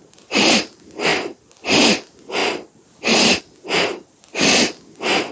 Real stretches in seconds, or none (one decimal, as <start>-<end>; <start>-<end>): 0.0-5.3